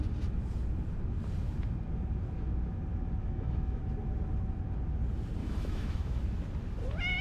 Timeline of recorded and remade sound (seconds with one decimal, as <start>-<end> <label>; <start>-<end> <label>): 0.0-3.2 recorded; 3.2-3.8 remade; 3.8-5.4 recorded; 5.4-6.2 remade; 6.2-7.2 recorded